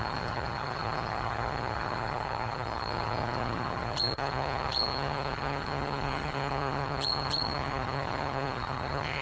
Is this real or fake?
fake